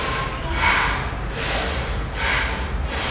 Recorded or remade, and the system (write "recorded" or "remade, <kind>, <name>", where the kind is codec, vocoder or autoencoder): recorded